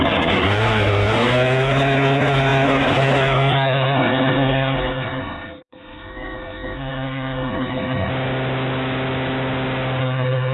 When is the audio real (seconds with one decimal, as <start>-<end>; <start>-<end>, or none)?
8.1-10.0